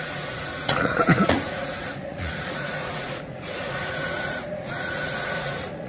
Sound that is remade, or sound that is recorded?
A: remade